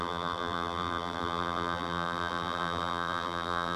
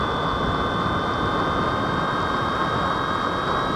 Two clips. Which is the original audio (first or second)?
second